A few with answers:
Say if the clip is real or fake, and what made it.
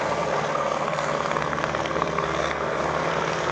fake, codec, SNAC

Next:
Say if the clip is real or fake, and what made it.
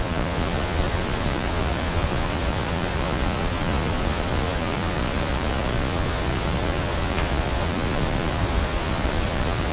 fake, vocoder, Vocos